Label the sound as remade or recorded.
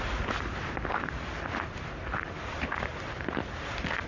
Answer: recorded